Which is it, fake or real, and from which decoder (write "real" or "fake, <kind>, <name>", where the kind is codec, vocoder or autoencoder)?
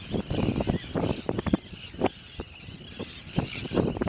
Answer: real